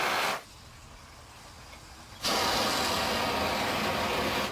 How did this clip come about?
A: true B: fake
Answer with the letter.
A